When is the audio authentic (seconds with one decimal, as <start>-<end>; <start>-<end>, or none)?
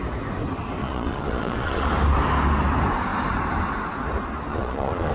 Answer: 0.0-0.8; 1.9-4.5